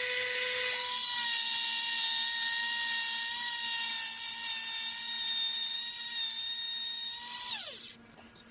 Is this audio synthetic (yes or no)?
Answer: no